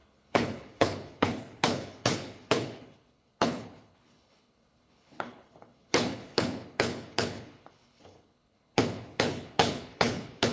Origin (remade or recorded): remade